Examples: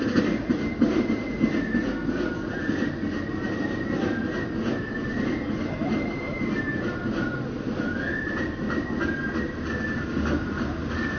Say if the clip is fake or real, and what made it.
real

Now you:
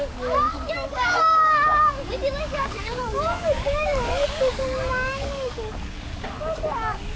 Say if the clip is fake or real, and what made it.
fake, codec, DAC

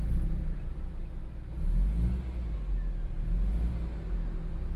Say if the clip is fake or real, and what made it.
real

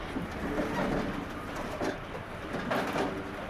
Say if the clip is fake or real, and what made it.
real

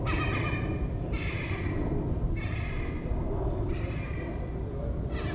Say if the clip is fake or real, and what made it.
real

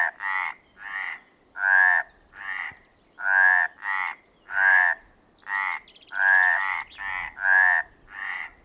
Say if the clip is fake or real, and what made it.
real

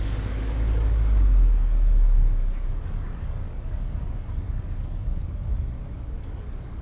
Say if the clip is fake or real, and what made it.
fake, codec, DAC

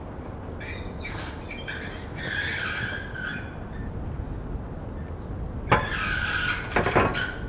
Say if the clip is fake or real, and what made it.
real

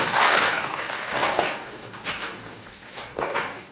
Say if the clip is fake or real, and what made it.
fake, codec, DAC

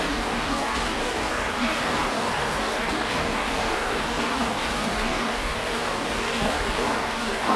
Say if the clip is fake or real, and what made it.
fake, codec, DAC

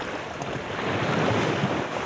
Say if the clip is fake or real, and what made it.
real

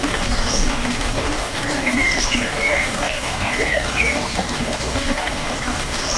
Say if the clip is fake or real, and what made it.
fake, codec, DAC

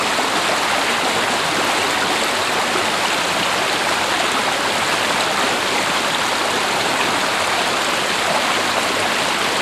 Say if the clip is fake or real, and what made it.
real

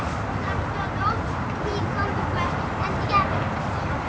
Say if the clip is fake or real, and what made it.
real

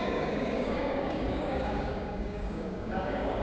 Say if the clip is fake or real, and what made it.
fake, codec, DAC